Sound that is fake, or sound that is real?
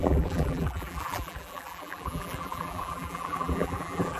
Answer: fake